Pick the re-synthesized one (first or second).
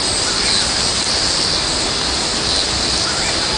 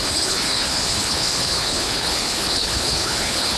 second